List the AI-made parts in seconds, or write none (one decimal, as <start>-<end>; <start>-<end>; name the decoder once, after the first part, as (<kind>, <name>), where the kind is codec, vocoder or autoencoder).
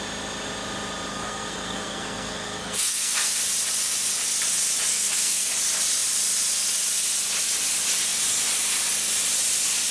1.1-3.4 (codec, SNAC); 4.9-5.5